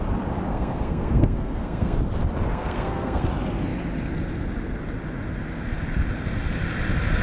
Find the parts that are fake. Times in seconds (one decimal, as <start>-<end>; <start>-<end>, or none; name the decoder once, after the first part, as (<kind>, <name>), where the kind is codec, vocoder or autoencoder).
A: 0.5-2.0 (codec, SNAC); 2.5-3.3